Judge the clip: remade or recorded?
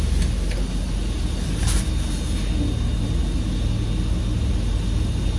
recorded